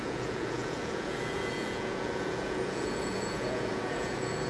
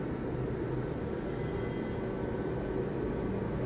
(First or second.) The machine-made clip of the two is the first